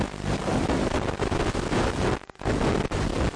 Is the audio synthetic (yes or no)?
no